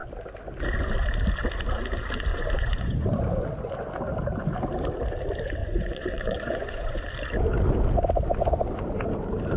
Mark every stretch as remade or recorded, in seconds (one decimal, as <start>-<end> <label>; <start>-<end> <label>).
0.0-2.3 recorded; 2.3-3.9 remade; 3.9-5.6 recorded; 5.6-7.0 remade; 7.0-9.6 recorded